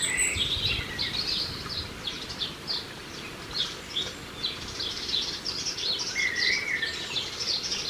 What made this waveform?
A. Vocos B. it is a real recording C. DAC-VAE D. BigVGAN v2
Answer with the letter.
B